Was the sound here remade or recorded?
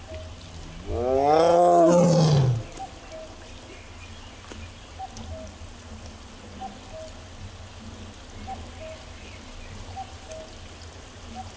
recorded